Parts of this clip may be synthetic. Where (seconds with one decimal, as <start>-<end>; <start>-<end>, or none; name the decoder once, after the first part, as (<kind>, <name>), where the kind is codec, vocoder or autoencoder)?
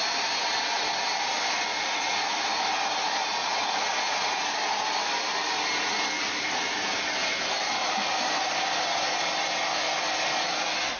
1.7-2.3 (vocoder, Vocos); 3.4-4.4